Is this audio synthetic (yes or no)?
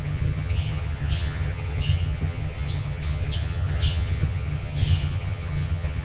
yes